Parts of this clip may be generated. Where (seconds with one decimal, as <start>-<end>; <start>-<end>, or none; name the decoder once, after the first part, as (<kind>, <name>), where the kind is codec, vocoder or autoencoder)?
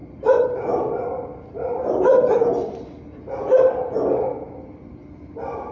none